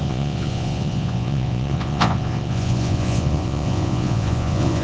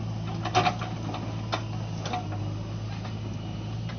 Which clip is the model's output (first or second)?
first